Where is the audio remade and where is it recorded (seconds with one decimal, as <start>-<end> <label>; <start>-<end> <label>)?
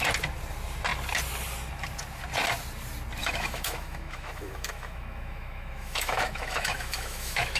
0.0-3.2 recorded; 3.2-7.6 remade